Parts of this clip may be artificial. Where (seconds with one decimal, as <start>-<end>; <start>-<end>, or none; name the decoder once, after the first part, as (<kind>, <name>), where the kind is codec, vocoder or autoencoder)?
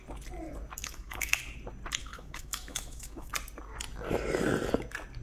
0.8-1.4 (autoencoder, DAC-VAE); 2.0-3.3